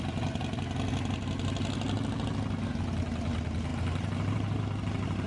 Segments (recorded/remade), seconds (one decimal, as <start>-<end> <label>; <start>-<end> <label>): 0.0-3.7 recorded; 3.7-4.6 remade; 4.6-5.3 recorded